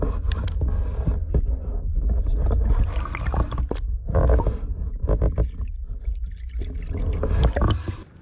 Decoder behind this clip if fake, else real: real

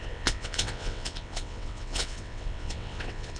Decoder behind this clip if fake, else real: fake, vocoder, WaveNeXt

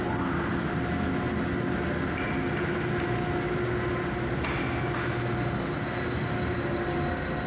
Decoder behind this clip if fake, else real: real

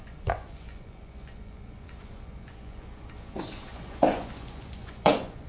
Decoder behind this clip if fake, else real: fake, vocoder, Vocos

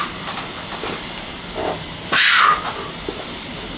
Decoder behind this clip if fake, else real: real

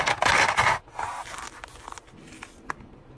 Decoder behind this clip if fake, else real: real